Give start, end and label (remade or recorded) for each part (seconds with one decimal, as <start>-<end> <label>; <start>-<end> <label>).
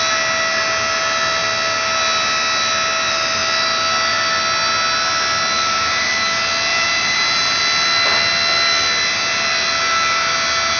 0.0-6.7 recorded; 6.7-7.6 remade; 7.6-10.8 recorded